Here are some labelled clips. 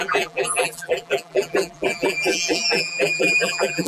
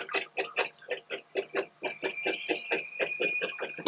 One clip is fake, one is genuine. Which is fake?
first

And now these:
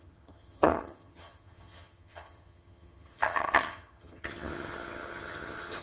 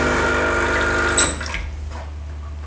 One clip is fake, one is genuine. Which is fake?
first